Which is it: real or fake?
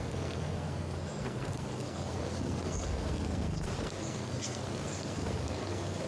fake